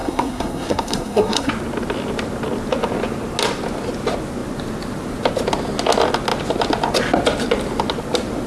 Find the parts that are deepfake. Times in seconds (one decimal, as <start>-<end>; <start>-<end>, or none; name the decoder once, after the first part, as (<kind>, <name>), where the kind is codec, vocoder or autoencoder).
0.0-1.5 (codec, SNAC)